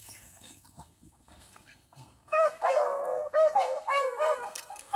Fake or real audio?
fake